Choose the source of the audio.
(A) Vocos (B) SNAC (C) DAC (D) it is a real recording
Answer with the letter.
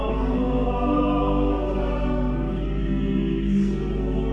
B